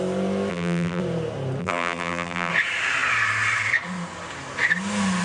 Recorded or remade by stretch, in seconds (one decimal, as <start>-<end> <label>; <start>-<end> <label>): 0.0-0.5 recorded; 0.5-1.0 remade; 1.0-1.6 recorded; 1.6-2.5 remade; 2.5-5.2 recorded